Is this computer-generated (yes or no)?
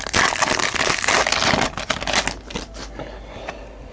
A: no